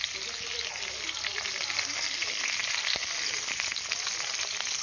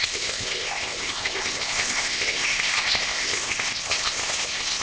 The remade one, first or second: second